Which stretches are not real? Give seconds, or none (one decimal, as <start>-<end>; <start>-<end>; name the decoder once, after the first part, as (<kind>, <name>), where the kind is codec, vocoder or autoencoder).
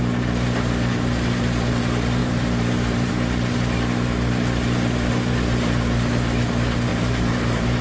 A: 2.2-3.1 (vocoder, BigVGAN v2); 6.9-7.8